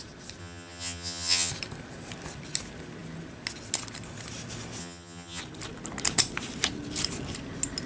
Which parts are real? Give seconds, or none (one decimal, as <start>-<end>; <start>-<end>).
0.0-0.4; 1.5-4.8; 5.4-7.9